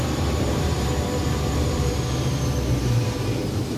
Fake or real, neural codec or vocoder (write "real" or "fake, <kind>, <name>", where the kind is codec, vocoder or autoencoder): fake, vocoder, BigVGAN v2